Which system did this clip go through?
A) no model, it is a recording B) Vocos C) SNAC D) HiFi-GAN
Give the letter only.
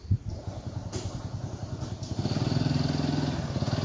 A